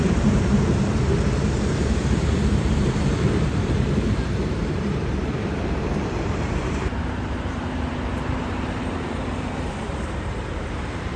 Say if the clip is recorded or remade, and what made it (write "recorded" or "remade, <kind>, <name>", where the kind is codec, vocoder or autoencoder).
remade, vocoder, BigVGAN v2